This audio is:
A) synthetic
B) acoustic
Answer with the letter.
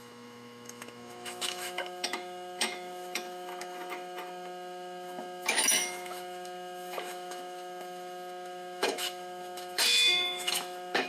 A